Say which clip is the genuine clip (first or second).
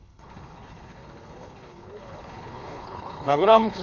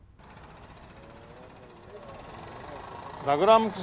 second